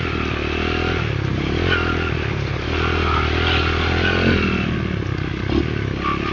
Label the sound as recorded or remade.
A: recorded